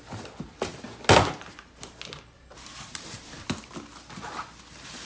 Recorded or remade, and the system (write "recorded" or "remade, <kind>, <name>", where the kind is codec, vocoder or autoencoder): recorded